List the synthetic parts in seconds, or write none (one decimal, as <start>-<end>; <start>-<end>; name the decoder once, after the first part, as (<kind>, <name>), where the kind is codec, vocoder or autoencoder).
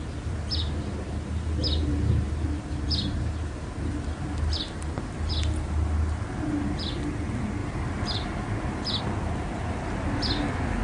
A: 0.5-1.1 (vocoder, BigVGAN v2); 1.9-5.3; 7.6-9.0